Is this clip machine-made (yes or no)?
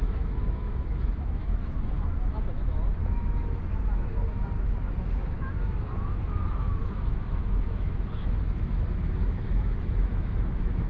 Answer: yes